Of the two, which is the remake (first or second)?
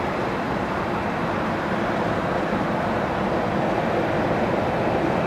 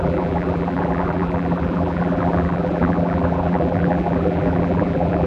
second